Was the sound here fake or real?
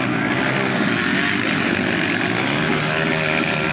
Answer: real